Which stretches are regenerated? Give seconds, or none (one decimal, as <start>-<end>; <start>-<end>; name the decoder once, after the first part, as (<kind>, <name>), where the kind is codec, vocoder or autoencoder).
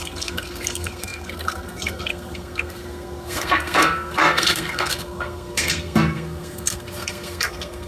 0.0-7.9 (codec, SNAC)